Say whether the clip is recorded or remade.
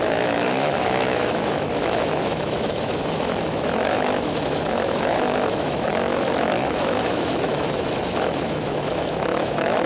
remade